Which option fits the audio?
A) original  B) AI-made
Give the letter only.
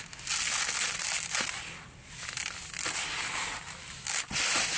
A